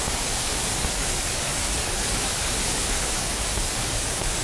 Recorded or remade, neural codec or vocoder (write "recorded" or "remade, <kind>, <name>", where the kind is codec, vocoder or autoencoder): remade, codec, DAC